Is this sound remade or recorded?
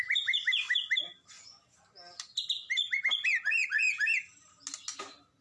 recorded